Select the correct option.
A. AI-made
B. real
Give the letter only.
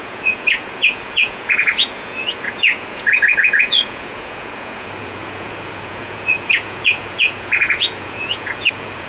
A